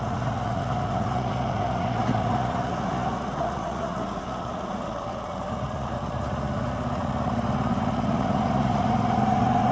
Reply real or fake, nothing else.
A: fake